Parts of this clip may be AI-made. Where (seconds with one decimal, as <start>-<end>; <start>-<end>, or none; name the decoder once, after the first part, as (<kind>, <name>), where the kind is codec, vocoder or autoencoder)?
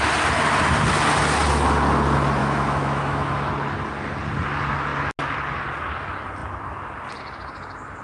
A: 2.4-3.5 (autoencoder, DAC-VAE)